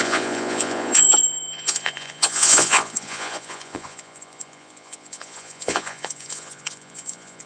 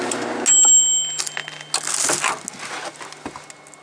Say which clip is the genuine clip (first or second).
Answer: second